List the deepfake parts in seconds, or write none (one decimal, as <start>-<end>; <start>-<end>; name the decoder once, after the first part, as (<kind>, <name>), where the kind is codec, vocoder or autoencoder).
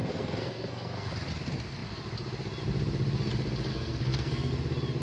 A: 0.0-1.1 (codec, SNAC); 3.7-4.5